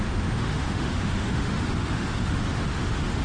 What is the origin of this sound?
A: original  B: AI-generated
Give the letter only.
B